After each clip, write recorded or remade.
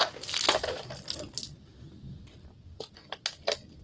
recorded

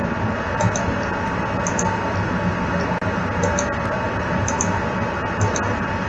recorded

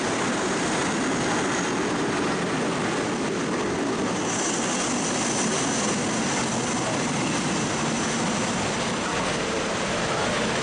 recorded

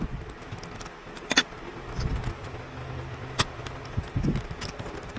recorded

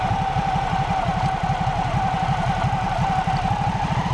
recorded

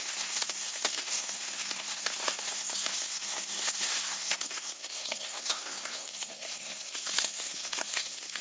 remade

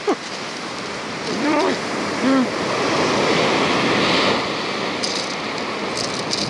recorded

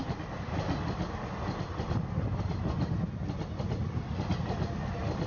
recorded